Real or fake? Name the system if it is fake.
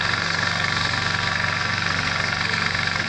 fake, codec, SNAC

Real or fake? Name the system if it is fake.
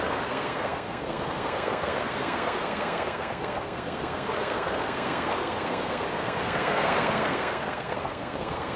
fake, codec, SNAC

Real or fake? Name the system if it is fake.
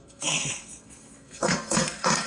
fake, codec, SNAC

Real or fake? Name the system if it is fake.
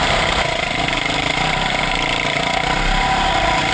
real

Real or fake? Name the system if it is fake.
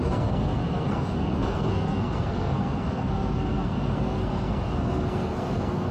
fake, codec, SNAC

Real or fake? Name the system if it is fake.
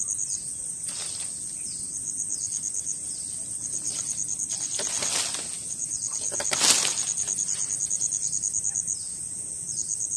real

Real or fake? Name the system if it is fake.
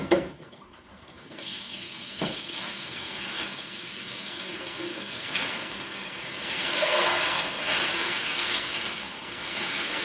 fake, codec, SNAC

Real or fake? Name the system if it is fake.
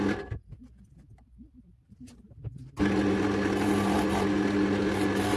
real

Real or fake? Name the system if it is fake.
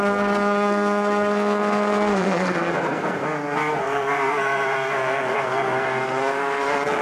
fake, codec, SNAC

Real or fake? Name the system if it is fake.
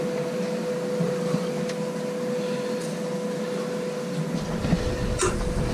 real